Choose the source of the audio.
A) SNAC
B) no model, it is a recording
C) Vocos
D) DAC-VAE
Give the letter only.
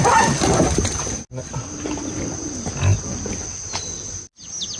B